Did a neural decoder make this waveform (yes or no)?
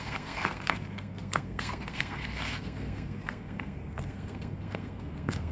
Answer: yes